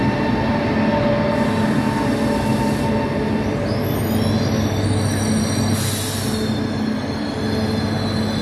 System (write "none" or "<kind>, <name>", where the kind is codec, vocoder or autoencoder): none